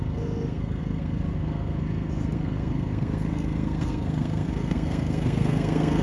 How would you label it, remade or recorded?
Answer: remade